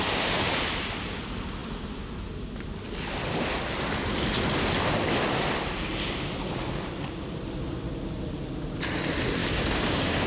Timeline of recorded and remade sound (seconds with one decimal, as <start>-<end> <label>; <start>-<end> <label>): 0.0-9.4 recorded; 9.4-10.3 remade